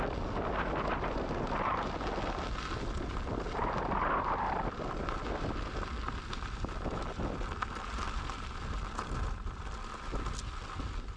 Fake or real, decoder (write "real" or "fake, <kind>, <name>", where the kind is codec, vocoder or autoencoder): real